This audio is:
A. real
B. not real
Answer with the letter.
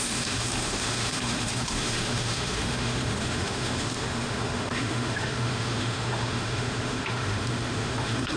B